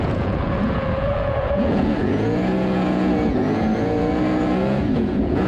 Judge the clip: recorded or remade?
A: remade